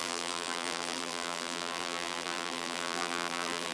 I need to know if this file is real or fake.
fake